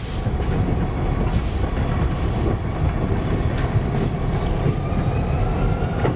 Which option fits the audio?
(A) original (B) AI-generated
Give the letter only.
A